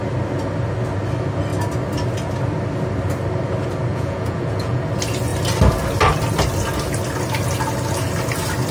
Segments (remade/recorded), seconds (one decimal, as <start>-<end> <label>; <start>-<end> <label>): 0.0-3.9 recorded; 3.9-4.8 remade; 4.8-8.7 recorded